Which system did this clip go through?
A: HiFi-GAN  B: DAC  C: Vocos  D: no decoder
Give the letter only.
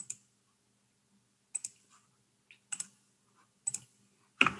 D